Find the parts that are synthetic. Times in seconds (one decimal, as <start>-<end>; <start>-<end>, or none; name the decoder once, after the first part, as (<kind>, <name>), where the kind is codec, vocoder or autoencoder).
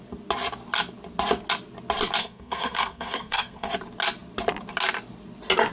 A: 2.2-3.7 (codec, SNAC)